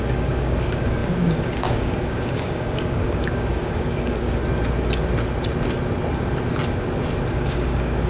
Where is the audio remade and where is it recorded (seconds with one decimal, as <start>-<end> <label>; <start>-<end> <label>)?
0.0-4.4 remade; 4.4-7.3 recorded; 7.3-8.1 remade